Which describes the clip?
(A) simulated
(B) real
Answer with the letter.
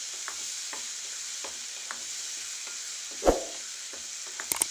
B